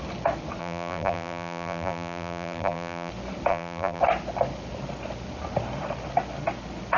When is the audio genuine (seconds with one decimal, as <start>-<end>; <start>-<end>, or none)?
0.0-0.6; 3.1-3.5; 4.0-7.0